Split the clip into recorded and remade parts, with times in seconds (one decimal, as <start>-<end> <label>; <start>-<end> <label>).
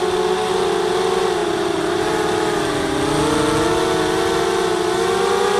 0.0-1.4 recorded; 1.4-3.2 remade; 3.2-5.6 recorded